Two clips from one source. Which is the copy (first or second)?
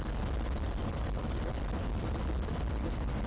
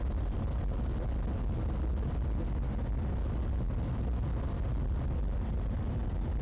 first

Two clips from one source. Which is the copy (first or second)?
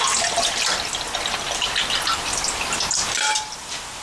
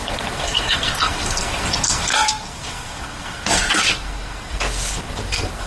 second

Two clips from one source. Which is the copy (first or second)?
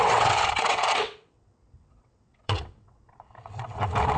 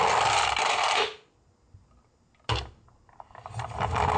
first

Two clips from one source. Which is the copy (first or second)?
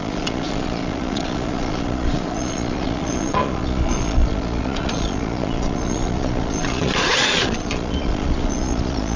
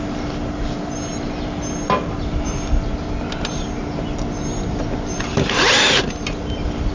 first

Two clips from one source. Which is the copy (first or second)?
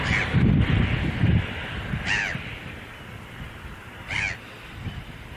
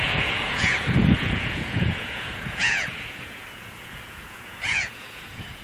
second